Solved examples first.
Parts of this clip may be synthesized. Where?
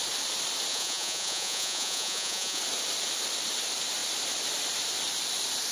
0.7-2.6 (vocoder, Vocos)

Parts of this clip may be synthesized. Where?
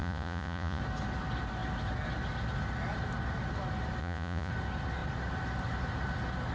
0.0-0.8 (vocoder, Vocos); 4.0-4.5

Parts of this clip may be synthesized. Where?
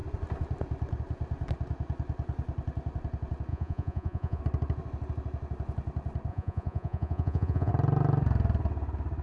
3.5-4.4 (vocoder, Vocos); 6.3-7.7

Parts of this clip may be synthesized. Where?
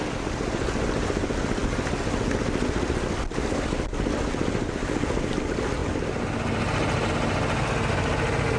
none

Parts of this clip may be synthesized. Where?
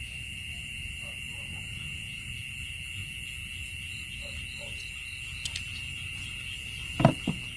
1.5-2.3 (vocoder, Vocos)